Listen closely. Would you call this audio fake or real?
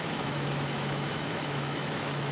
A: fake